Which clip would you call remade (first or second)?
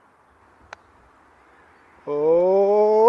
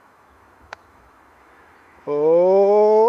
second